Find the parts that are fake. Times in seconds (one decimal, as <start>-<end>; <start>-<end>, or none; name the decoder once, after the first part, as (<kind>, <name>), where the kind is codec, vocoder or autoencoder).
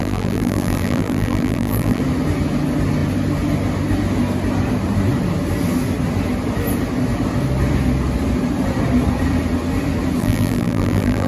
0.0-2.0 (vocoder, BigVGAN v2); 10.2-11.3